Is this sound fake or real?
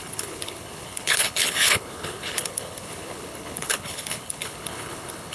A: fake